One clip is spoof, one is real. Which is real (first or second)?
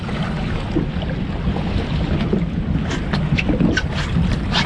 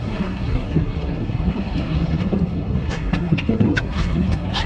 first